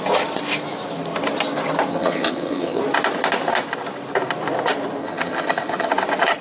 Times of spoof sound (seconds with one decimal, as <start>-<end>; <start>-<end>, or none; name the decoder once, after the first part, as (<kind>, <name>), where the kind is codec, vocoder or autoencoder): 1.9-2.8 (vocoder, HiFi-GAN); 5.0-5.9

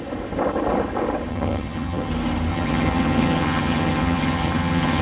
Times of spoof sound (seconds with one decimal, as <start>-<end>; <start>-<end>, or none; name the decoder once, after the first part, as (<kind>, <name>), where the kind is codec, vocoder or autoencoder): 1.3-2.1 (vocoder, HiFi-GAN); 2.5-5.0

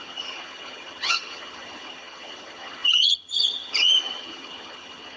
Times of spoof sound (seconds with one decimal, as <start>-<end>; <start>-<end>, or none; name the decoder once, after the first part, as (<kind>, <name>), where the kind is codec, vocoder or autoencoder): 0.0-5.2 (vocoder, HiFi-GAN)

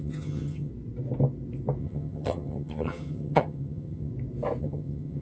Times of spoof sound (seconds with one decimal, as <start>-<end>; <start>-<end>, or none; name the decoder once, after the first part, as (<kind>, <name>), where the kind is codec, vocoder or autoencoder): 0.0-0.7 (vocoder, HiFi-GAN); 1.8-4.1; 4.6-5.2